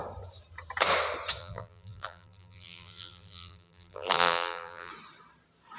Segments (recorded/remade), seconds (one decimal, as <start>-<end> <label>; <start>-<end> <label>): 0.0-1.4 recorded; 1.4-4.9 remade; 4.9-5.8 recorded